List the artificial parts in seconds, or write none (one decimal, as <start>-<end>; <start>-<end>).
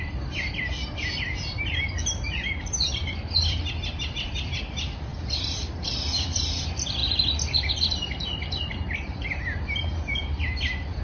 0.0-7.0; 7.7-11.0